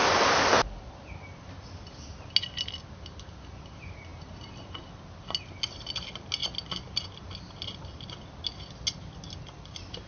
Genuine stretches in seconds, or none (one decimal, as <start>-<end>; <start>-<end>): 0.0-10.1